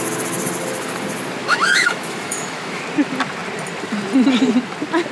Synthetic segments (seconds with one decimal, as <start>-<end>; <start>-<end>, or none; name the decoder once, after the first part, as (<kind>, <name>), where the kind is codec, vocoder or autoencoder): 1.4-2.8 (autoencoder, DAC-VAE)